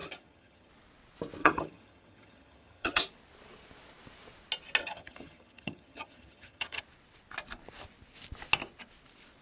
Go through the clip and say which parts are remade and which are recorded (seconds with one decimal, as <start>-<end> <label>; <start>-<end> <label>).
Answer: 0.0-0.7 remade; 0.7-1.4 recorded; 1.4-3.0 remade; 3.0-4.8 recorded; 4.8-6.8 remade; 6.8-9.4 recorded